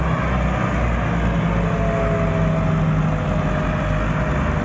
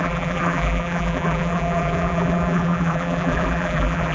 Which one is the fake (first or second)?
second